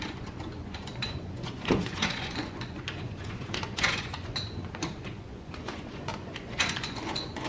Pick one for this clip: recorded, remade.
remade